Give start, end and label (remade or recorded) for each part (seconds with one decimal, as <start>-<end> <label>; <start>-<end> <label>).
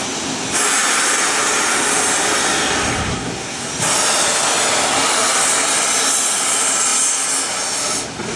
0.0-3.1 recorded; 3.1-3.7 remade; 3.7-8.4 recorded